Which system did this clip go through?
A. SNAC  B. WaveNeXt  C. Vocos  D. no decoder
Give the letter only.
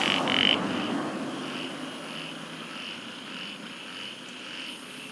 D